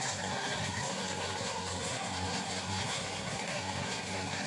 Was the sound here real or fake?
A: fake